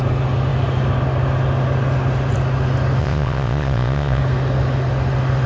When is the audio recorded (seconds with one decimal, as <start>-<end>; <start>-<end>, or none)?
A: 0.0-3.0; 4.2-5.5